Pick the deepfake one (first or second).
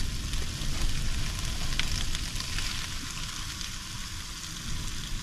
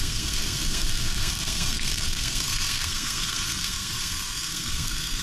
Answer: second